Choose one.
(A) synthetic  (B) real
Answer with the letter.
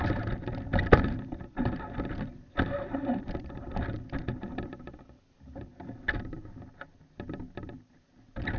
B